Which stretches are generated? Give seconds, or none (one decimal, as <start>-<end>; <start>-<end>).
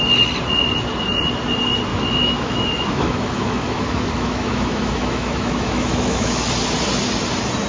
1.9-6.5